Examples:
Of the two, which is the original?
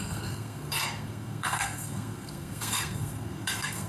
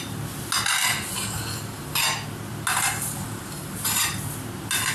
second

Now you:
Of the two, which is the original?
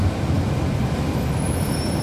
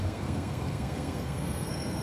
first